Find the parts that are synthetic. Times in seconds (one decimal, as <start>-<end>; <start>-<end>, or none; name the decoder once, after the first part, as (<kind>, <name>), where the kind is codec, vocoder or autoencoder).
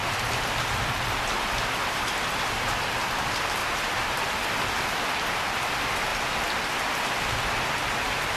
0.0-1.2 (vocoder, BigVGAN v2); 3.6-5.0